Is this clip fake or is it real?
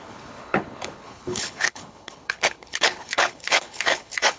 fake